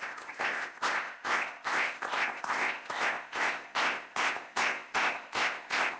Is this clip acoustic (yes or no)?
no